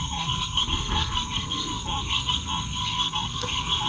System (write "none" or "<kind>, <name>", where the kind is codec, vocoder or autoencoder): codec, SNAC